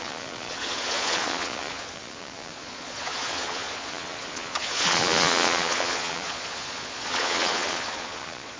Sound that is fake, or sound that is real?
fake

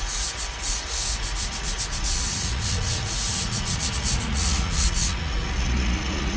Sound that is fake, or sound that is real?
fake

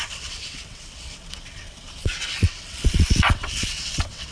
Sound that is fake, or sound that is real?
fake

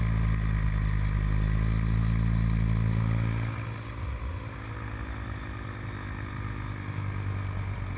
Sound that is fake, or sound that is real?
real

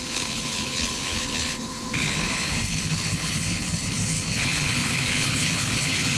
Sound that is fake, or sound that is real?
fake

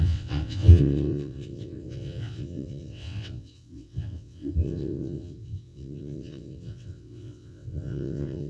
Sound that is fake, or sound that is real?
fake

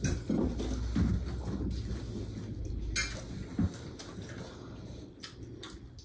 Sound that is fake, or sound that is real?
real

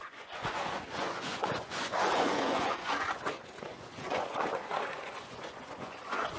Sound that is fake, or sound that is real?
fake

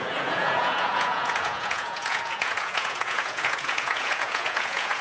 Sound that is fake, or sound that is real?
fake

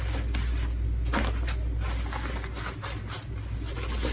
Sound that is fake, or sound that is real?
real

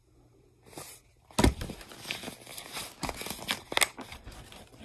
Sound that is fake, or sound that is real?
real